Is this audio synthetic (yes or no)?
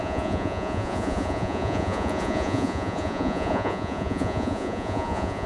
yes